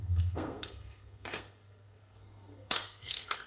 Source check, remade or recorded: remade